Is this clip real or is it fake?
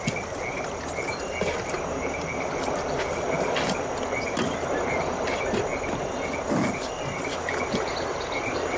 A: real